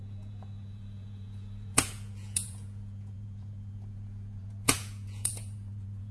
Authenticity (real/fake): fake